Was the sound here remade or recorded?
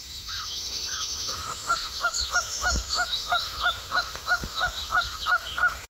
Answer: remade